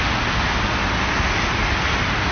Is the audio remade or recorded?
recorded